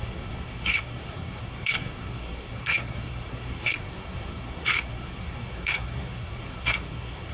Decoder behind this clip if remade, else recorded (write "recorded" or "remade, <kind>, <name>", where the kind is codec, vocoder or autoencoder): remade, codec, SNAC